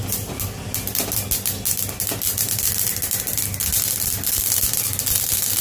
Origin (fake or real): real